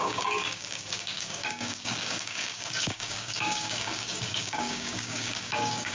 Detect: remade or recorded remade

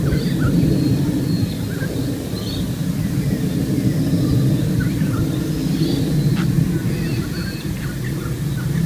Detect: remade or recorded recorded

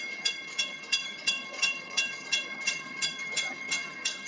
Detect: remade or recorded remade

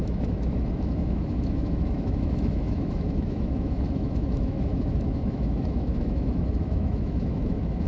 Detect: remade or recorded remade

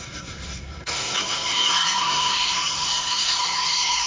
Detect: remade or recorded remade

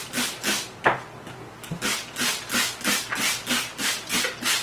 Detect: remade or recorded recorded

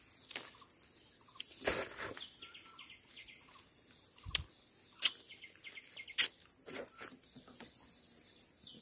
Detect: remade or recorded recorded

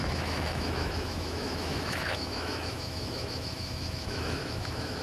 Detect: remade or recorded remade